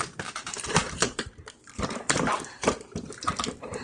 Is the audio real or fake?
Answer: fake